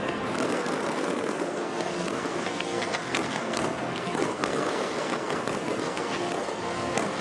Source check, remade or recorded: remade